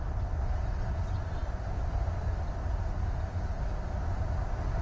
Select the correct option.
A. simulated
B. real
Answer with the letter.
B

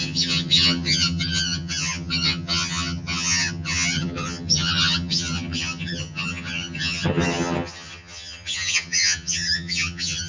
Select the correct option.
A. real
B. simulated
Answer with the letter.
B